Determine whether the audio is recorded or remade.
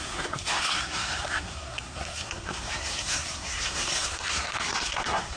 remade